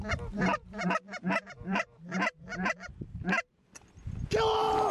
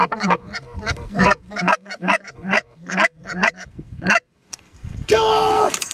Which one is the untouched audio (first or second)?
first